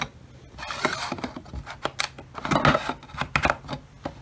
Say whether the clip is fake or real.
real